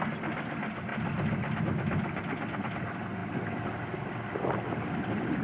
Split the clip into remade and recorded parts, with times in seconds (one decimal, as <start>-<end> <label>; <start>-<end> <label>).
0.0-5.4 recorded

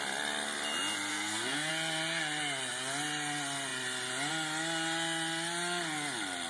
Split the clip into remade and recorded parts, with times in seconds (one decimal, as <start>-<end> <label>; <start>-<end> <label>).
0.0-1.1 recorded; 1.1-1.7 remade; 1.7-6.5 recorded

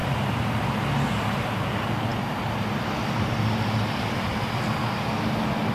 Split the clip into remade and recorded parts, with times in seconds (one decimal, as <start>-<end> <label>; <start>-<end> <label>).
0.0-5.7 recorded

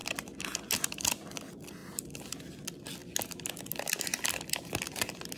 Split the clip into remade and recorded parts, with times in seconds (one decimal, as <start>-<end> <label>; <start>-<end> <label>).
0.0-5.4 recorded

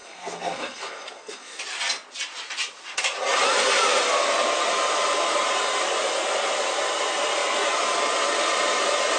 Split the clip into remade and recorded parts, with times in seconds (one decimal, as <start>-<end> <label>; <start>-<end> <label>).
0.0-1.6 remade; 1.6-9.2 recorded

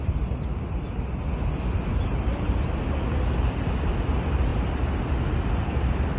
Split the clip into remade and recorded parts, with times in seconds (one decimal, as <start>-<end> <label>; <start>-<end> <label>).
0.0-6.2 recorded